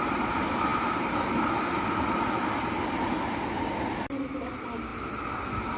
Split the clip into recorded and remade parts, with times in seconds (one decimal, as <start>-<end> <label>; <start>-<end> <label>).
0.0-5.8 recorded